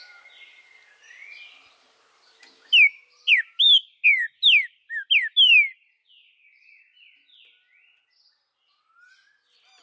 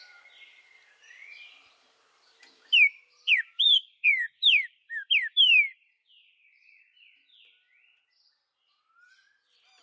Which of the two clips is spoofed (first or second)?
second